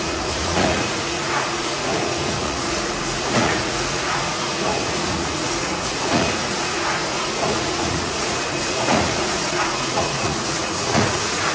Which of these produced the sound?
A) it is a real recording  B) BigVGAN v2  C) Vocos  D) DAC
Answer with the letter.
C